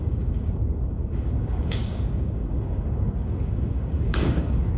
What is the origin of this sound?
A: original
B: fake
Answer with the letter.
B